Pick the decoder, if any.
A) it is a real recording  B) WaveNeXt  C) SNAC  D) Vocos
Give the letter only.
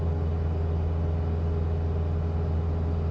A